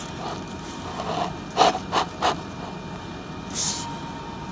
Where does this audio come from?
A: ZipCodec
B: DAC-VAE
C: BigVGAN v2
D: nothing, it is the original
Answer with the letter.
D